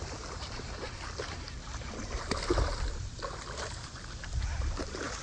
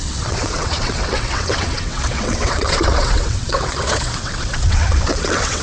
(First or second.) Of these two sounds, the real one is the first